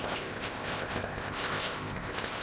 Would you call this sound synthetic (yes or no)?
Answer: yes